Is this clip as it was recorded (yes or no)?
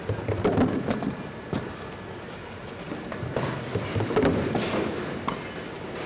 yes